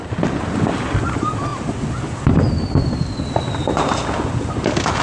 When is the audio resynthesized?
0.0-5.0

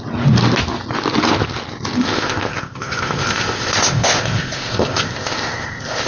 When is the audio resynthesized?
2.0-6.1

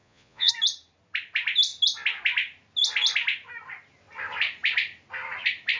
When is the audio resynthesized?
0.0-0.5

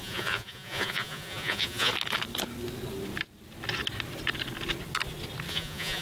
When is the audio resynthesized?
0.0-1.9; 5.5-6.0

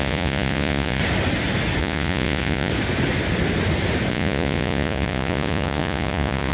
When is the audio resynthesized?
0.0-1.0; 1.8-2.7; 4.1-6.5

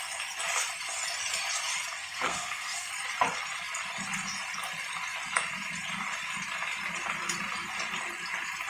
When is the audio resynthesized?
2.0-2.9

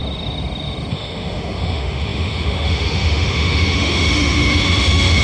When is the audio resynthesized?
0.9-5.2

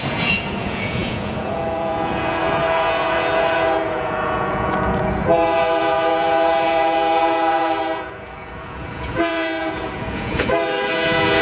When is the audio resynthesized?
0.0-11.4